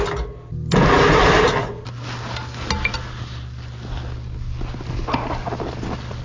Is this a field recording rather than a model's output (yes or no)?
yes